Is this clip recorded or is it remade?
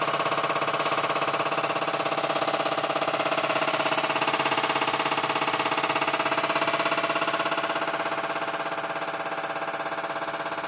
recorded